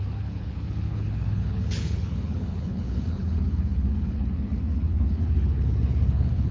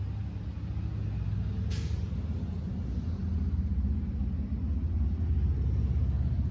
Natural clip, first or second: second